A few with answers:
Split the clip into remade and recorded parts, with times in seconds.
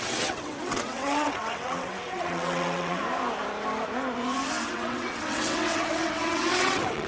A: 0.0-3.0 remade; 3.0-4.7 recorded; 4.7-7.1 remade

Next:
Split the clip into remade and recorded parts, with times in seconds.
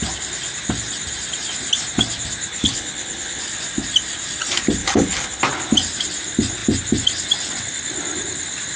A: 0.0-2.5 recorded; 2.5-3.4 remade; 3.4-4.8 recorded; 4.8-5.4 remade; 5.4-8.8 recorded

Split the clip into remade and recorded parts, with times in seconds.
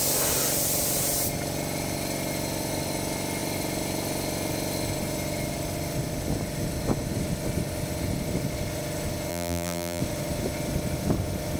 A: 0.0-9.3 recorded; 9.3-10.0 remade; 10.0-11.6 recorded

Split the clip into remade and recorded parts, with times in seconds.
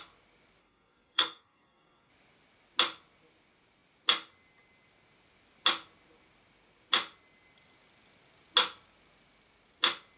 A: 0.0-0.6 recorded; 0.6-2.1 remade; 2.1-10.2 recorded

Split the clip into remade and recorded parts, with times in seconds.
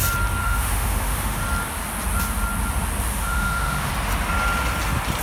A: 0.0-0.4 recorded; 0.4-1.4 remade; 1.4-3.1 recorded; 3.1-3.9 remade; 3.9-5.2 recorded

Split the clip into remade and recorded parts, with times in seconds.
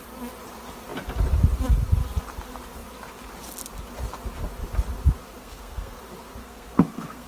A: 0.0-5.4 recorded; 5.4-6.0 remade; 6.0-6.4 recorded; 6.4-7.3 remade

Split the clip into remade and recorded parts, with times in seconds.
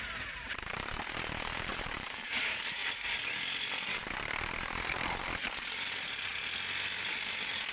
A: 0.0-1.7 recorded; 1.7-2.3 remade; 2.3-7.7 recorded